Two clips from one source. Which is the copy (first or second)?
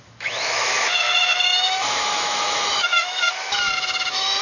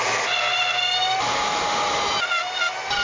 first